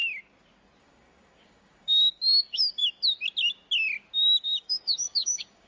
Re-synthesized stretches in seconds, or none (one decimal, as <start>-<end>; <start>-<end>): 0.8-2.8; 4.4-5.7